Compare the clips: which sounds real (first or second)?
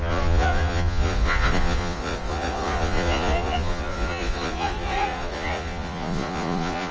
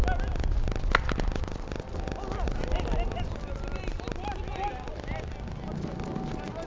second